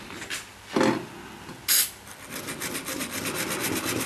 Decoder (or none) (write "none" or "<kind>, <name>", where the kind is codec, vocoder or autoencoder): none